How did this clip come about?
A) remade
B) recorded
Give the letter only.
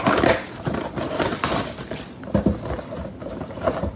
B